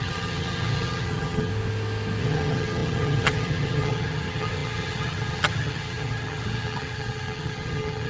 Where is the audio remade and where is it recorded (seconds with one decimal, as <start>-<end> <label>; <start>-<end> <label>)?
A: 0.0-1.5 remade; 1.5-2.2 recorded; 2.2-8.1 remade